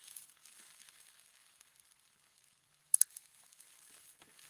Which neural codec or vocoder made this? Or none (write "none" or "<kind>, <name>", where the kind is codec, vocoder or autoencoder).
codec, SNAC